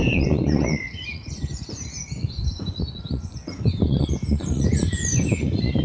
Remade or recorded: remade